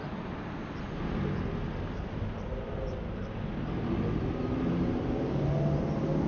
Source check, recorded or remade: recorded